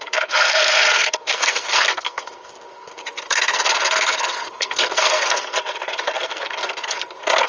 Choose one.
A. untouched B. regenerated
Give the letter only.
B